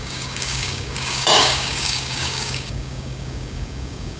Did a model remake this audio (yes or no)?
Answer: yes